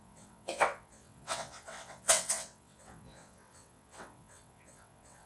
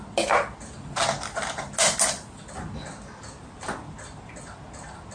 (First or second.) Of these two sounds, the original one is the second